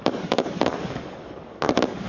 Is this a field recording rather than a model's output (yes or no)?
no